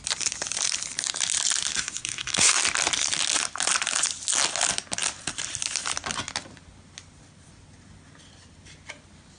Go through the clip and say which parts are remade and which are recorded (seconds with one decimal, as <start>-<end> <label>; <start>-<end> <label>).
0.0-1.7 recorded; 1.7-2.6 remade; 2.6-9.4 recorded